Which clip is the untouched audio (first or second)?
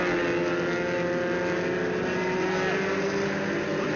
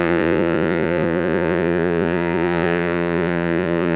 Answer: first